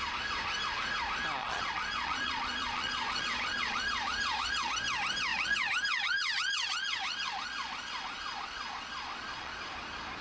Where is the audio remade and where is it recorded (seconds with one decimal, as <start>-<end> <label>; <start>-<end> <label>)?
0.0-1.4 recorded; 1.4-4.7 remade; 4.7-5.3 recorded; 5.3-9.5 remade; 9.5-10.2 recorded

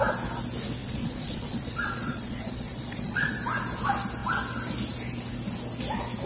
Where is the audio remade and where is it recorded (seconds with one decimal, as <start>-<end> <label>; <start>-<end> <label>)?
0.0-0.8 recorded; 0.8-3.3 remade; 3.3-6.3 recorded

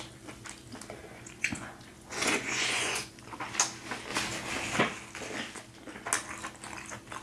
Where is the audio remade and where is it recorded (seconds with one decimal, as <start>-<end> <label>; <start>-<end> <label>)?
0.0-1.0 recorded; 1.0-3.1 remade; 3.1-7.2 recorded

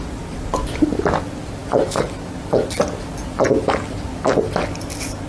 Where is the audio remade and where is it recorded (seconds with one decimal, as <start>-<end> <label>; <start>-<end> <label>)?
0.0-5.3 recorded

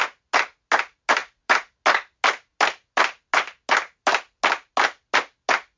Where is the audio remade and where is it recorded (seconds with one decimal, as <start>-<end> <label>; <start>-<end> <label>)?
0.0-5.8 recorded